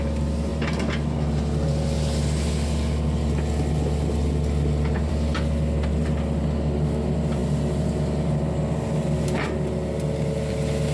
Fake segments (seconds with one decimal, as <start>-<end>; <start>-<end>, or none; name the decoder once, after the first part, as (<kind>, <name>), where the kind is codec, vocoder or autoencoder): none